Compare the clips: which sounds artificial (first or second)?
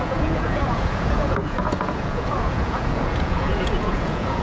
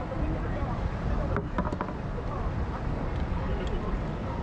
first